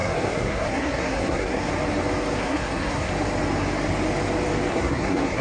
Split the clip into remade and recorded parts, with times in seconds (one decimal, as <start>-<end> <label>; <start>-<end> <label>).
0.0-1.7 remade; 1.7-2.4 recorded; 2.4-3.1 remade; 3.1-4.7 recorded; 4.7-5.4 remade